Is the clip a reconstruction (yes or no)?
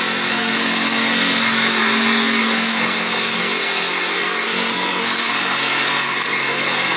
yes